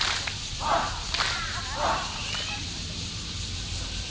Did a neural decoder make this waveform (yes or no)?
no